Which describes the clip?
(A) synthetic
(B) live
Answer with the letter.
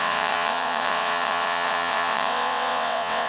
A